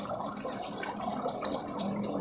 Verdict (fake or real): fake